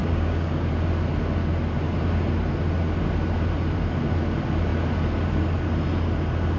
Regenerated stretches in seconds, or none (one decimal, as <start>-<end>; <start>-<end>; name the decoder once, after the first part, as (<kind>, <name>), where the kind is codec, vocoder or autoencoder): 0.0-0.7 (codec, DAC)